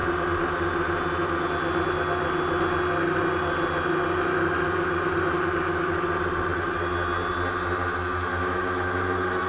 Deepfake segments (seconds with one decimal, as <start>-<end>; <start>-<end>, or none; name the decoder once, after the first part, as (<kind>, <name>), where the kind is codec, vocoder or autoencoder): 8.3-9.5 (autoencoder, DAC-VAE)